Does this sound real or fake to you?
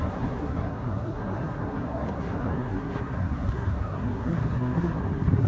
fake